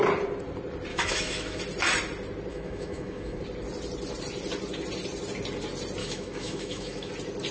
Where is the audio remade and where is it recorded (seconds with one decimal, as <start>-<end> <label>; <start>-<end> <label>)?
0.0-0.9 recorded; 0.9-1.6 remade; 1.6-2.5 recorded; 2.5-3.4 remade; 3.4-6.0 recorded; 6.0-7.1 remade; 7.1-7.5 recorded

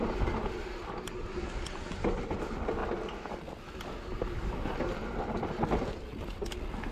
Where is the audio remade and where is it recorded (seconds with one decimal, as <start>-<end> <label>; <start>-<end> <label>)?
0.0-6.9 recorded

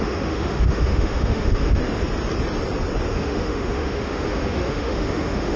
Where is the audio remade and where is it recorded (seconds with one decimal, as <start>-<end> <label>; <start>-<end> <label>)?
0.0-1.8 remade; 1.8-3.1 recorded; 3.1-5.6 remade

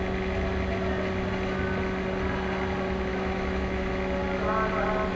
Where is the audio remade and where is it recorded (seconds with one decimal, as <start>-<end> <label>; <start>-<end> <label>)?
0.0-3.1 recorded; 3.1-3.9 remade; 3.9-5.2 recorded

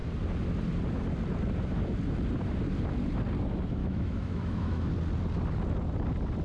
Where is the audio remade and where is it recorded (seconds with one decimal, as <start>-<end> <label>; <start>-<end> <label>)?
0.0-3.8 recorded; 3.8-4.9 remade; 4.9-6.4 recorded